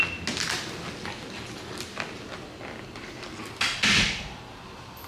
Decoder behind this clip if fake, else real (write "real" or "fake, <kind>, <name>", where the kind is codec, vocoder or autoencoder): real